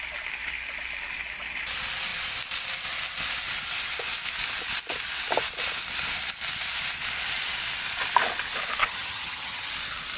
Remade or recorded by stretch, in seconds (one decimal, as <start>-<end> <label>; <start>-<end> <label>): 0.0-8.8 recorded; 8.8-9.7 remade; 9.7-10.2 recorded